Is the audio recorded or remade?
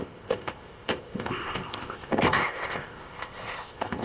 remade